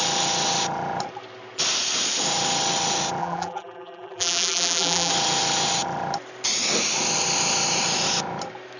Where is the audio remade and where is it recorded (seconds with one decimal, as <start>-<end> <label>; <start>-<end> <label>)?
0.0-3.2 recorded; 3.2-5.1 remade; 5.1-8.8 recorded